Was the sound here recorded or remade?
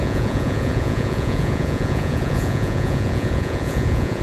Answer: remade